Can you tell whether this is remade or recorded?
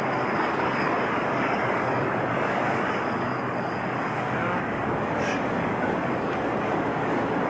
remade